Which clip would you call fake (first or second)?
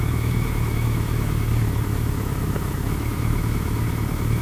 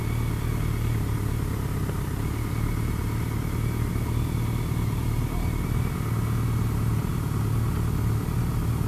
first